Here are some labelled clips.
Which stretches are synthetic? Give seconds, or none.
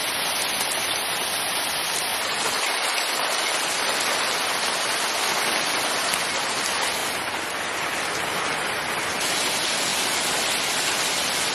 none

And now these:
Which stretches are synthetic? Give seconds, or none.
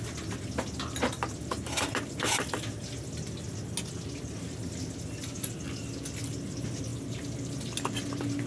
6.9-7.5 (vocoder, BigVGAN v2)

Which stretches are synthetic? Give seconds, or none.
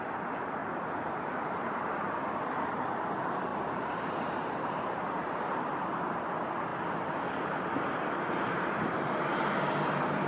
0.6-2.2 (vocoder, BigVGAN v2); 3.5-6.3